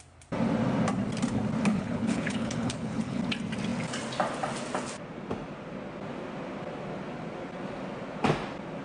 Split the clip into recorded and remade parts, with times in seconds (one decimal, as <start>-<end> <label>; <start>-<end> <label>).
0.0-1.7 recorded; 1.7-3.2 remade; 3.2-8.8 recorded